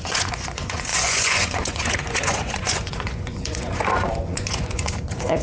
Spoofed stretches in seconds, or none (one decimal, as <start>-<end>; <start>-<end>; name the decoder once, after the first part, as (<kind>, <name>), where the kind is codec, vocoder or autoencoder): 0.0-5.4 (vocoder, Vocos)